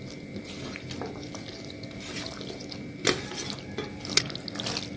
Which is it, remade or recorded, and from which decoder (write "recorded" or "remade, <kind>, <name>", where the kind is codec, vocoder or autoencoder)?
recorded